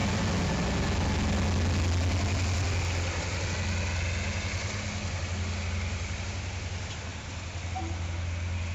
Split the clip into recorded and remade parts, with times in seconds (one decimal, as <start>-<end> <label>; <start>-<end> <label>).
0.0-8.7 recorded